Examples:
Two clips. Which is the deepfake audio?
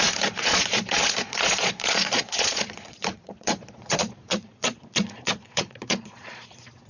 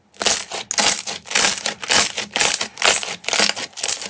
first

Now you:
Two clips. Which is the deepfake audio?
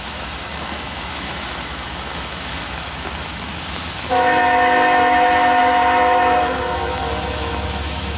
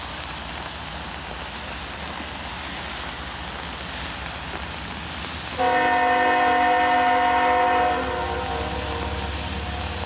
first